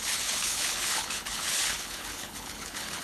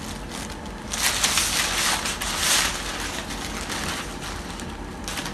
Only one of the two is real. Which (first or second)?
second